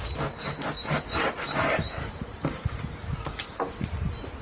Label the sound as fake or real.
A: real